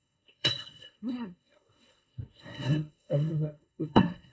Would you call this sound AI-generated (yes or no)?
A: yes